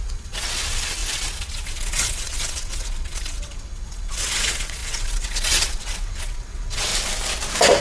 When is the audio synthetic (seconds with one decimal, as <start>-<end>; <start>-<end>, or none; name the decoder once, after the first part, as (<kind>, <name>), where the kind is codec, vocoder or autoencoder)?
0.0-6.9 (vocoder, WaveNeXt)